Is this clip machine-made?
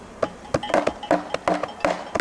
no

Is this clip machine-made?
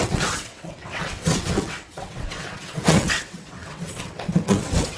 yes